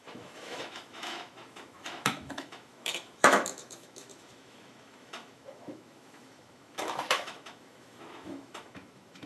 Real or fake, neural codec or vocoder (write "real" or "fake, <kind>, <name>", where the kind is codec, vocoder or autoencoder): fake, autoencoder, DAC-VAE